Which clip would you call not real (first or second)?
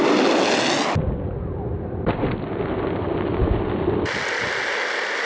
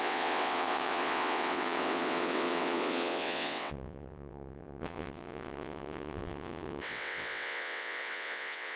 second